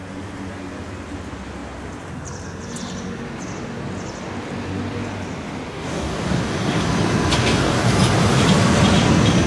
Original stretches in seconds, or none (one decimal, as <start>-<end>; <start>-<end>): 0.0-5.7; 6.8-7.4; 7.9-9.5